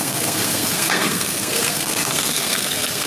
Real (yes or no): no